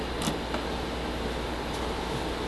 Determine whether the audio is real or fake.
real